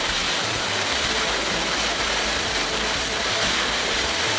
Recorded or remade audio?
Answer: remade